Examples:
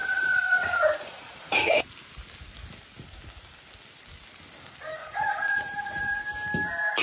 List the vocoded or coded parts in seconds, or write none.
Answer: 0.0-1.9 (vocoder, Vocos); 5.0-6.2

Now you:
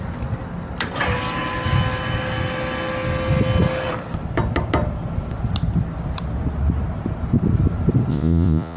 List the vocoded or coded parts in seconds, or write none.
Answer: 8.1-8.8 (vocoder, Vocos)